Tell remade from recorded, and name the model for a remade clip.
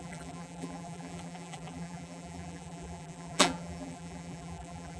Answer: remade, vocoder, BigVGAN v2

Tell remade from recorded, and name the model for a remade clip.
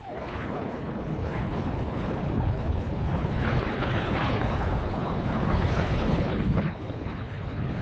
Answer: remade, codec, HILCodec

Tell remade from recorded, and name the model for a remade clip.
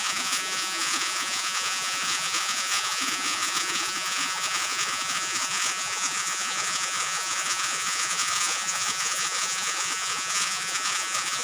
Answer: remade, vocoder, Vocos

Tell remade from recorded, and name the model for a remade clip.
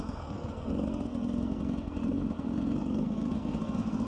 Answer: remade, codec, SNAC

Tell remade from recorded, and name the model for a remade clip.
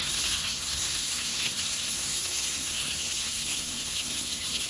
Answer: remade, codec, SNAC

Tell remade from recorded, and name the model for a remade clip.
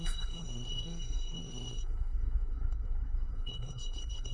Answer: remade, codec, SNAC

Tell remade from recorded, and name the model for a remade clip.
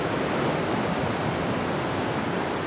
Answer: recorded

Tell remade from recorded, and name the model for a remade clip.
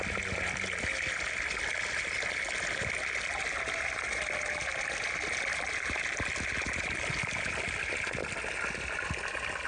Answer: recorded